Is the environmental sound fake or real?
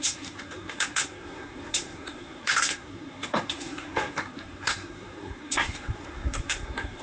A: fake